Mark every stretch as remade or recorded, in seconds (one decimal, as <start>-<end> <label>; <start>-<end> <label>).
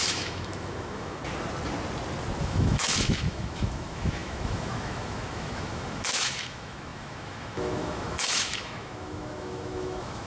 0.0-1.2 remade; 1.2-2.4 recorded; 2.4-10.3 remade